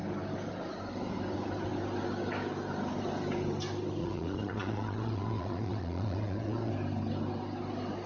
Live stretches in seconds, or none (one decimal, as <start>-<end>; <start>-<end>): 0.0-4.0; 6.7-8.1